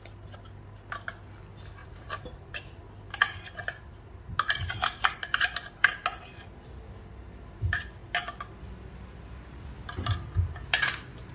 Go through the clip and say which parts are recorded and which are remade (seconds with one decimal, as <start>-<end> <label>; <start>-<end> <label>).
0.0-1.8 recorded; 1.8-2.8 remade; 2.8-11.3 recorded